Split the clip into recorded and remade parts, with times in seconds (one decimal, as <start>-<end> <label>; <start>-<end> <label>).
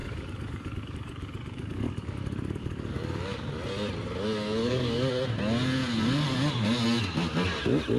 0.0-3.5 remade; 3.5-4.6 recorded; 4.6-5.1 remade; 5.1-8.0 recorded